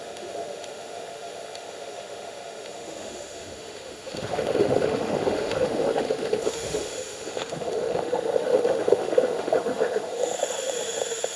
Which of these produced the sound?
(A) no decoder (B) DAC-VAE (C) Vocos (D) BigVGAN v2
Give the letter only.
B